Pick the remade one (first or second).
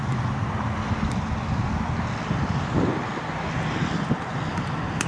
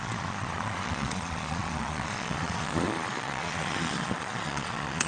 second